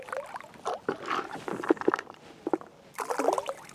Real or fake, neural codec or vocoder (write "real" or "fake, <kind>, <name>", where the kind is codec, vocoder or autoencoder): real